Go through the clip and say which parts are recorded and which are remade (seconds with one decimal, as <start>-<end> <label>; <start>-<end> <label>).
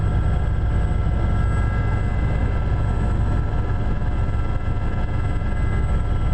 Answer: 0.0-6.3 recorded